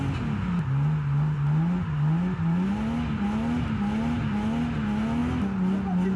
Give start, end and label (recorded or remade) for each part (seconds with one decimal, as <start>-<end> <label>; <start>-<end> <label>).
0.0-6.2 recorded